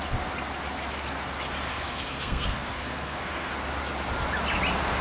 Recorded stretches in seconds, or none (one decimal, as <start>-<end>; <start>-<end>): 0.0-1.7; 3.5-5.0